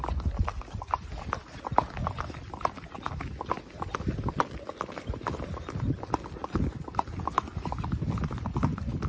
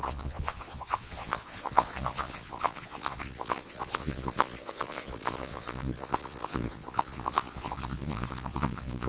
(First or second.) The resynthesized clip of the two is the second